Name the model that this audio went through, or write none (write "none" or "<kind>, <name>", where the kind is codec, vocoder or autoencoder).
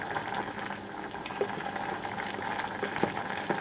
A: none